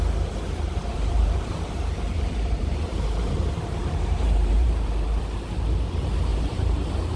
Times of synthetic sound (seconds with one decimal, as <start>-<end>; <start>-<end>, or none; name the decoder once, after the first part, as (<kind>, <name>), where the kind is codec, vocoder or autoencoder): 0.9-5.2 (vocoder, BigVGAN v2); 6.3-7.2